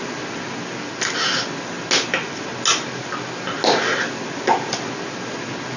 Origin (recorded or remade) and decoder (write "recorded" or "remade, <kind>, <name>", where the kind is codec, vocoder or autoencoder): recorded